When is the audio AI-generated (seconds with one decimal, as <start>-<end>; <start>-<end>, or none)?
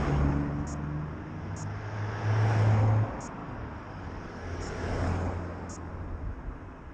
3.4-4.9